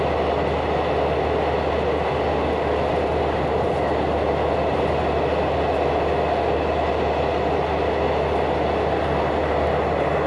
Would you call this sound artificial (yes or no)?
no